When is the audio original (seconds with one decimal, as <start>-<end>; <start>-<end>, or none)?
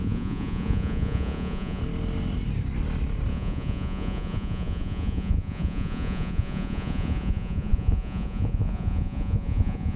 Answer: 1.8-3.3